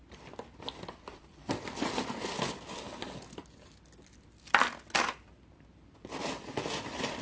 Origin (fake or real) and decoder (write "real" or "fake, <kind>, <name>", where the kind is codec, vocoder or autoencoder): real